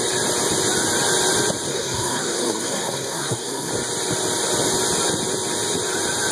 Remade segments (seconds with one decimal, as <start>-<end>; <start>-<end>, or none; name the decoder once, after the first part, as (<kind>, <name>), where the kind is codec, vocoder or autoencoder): 1.7-3.7 (codec, SNAC)